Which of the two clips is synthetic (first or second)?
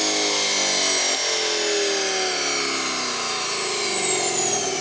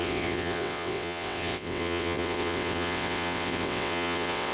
second